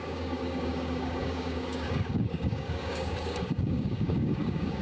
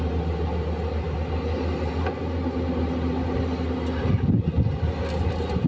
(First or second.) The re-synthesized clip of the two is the first